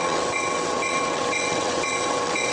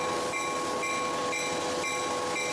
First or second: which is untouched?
second